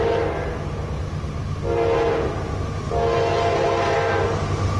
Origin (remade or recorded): recorded